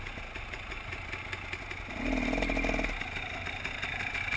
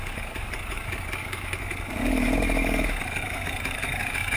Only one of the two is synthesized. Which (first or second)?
second